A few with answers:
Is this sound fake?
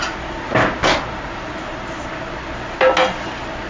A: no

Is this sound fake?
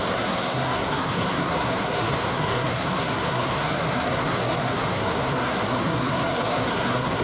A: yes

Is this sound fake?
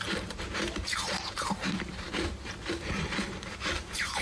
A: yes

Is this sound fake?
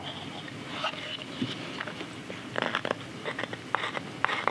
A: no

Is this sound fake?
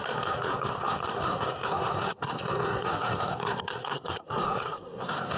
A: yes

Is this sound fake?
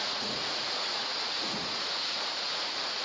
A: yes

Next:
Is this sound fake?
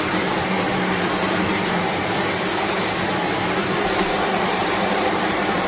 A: yes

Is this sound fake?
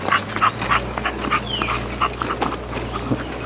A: no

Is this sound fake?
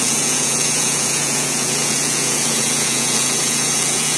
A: yes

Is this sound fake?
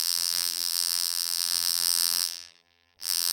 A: yes